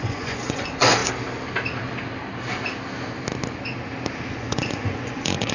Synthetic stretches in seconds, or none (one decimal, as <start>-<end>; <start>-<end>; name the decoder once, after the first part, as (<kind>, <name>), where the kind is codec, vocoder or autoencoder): 0.0-1.0 (vocoder, Vocos); 4.3-5.5